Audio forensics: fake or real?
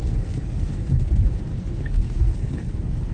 fake